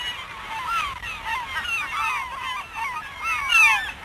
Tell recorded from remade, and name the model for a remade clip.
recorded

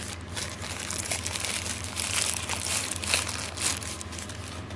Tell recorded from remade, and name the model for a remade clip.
recorded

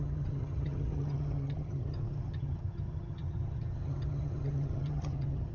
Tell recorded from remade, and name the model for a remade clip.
remade, vocoder, HiFi-GAN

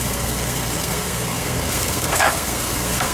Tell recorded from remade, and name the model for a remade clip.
remade, codec, SNAC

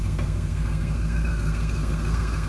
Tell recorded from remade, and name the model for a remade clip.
remade, codec, SNAC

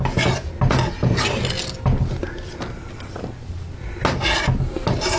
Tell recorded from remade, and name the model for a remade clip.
recorded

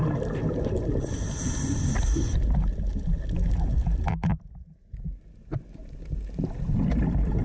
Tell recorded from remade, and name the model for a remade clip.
recorded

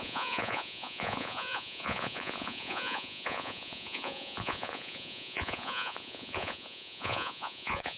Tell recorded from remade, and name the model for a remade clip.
remade, vocoder, Vocos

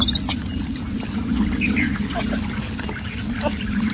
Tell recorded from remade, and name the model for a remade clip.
recorded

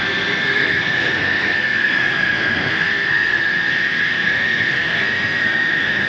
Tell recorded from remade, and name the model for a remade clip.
remade, codec, SNAC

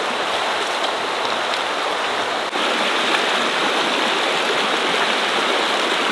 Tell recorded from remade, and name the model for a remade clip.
recorded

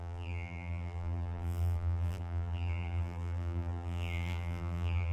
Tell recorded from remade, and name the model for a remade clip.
remade, vocoder, BigVGAN v2